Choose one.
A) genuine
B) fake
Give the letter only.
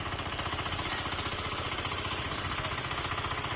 A